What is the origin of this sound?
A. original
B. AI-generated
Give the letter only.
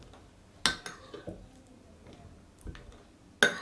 A